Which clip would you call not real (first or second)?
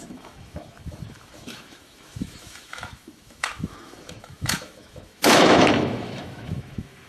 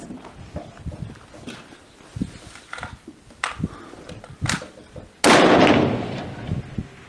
first